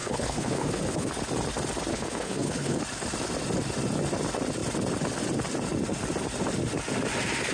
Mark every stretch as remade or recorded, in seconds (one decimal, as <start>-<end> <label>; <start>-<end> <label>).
0.0-1.1 remade; 1.1-1.9 recorded; 1.9-2.8 remade; 2.8-7.5 recorded